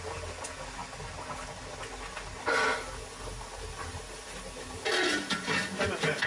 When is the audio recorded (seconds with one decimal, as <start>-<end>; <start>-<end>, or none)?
0.0-6.3

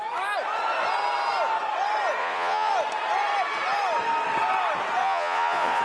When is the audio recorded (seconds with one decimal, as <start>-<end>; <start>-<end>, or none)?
0.0-2.2; 2.7-5.0

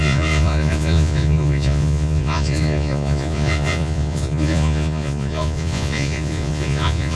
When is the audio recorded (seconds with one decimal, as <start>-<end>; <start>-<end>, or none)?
none

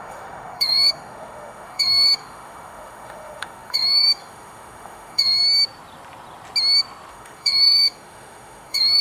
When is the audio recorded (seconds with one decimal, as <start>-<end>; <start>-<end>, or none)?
5.4-7.1